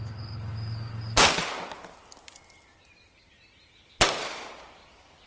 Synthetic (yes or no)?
no